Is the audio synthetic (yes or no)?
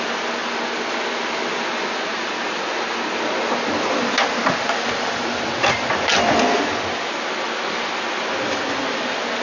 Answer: no